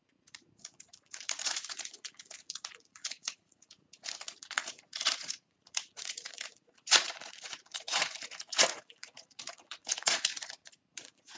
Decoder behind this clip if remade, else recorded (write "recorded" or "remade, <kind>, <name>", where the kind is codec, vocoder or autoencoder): remade, vocoder, Vocos